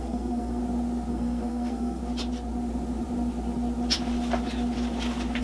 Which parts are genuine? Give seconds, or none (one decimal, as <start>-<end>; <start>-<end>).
0.6-1.1; 2.0-5.4